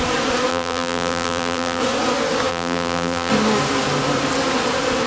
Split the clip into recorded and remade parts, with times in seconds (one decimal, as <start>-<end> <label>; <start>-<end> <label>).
0.0-0.5 recorded; 0.5-1.8 remade; 1.8-2.5 recorded; 2.5-3.3 remade; 3.3-5.1 recorded